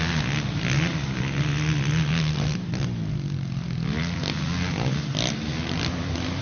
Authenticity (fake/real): real